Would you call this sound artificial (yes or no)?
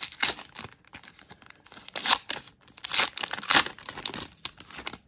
no